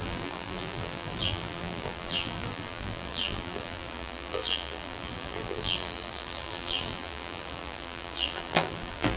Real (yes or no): no